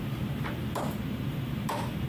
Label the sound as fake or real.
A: fake